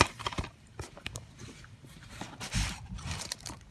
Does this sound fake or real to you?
fake